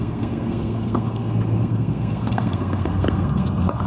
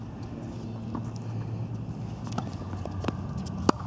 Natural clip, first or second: second